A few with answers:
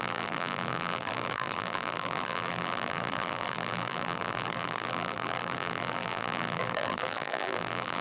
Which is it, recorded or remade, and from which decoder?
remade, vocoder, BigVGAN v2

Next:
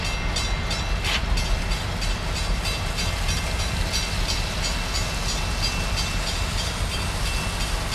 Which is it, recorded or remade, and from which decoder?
recorded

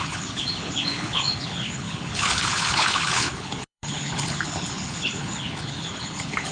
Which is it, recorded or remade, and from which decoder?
remade, codec, HILCodec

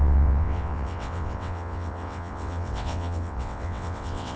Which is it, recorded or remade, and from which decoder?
remade, vocoder, WaveNeXt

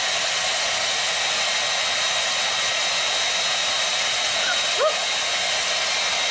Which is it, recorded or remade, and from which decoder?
recorded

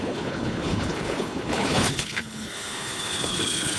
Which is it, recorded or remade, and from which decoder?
remade, codec, HILCodec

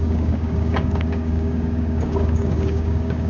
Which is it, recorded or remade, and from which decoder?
remade, codec, DAC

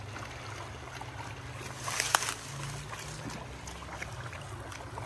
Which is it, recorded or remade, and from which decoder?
recorded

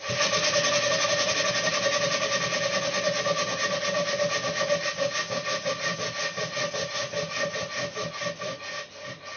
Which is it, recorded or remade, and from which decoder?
recorded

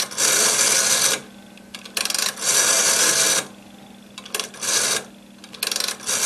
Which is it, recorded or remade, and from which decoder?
recorded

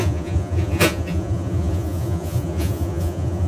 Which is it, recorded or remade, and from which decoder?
remade, vocoder, Vocos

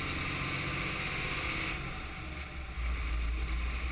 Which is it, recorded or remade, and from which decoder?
recorded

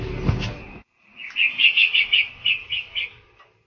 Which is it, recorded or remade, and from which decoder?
recorded